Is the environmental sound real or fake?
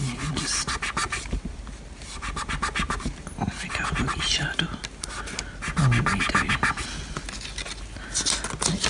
real